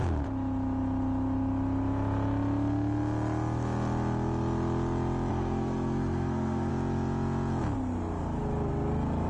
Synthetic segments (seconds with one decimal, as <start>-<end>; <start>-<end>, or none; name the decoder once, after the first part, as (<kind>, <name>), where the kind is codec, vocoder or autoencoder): 5.3-6.7 (codec, SNAC)